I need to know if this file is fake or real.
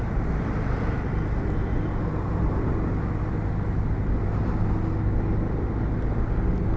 real